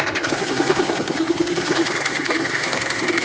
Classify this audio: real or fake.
fake